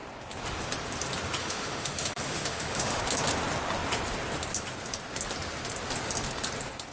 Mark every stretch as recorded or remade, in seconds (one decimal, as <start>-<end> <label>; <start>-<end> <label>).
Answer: 0.0-1.4 recorded; 1.4-3.0 remade; 3.0-6.9 recorded